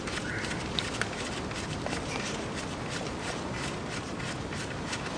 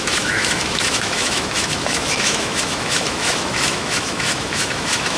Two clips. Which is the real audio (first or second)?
first